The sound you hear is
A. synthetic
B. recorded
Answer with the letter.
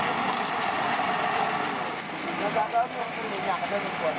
B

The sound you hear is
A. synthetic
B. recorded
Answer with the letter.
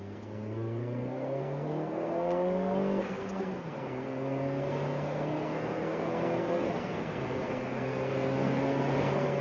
A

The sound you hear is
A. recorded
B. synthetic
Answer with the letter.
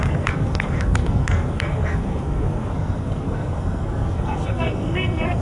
B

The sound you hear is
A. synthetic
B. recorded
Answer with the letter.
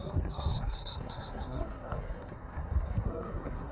A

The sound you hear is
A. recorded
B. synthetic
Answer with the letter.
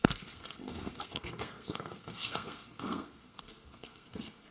B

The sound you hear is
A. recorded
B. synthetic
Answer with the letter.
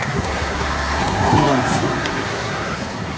B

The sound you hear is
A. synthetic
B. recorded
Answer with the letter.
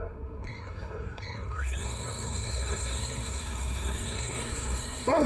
A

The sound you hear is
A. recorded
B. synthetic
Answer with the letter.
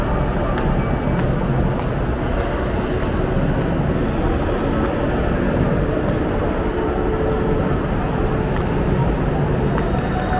A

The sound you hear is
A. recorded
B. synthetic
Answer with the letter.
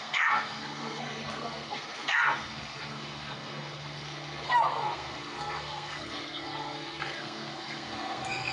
B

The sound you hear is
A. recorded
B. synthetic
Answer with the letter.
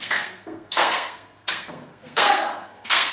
B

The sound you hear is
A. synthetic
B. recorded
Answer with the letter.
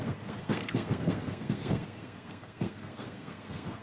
A